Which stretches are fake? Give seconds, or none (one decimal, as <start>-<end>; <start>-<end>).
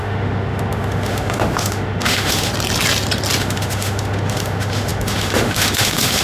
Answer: 0.0-2.5; 3.4-6.2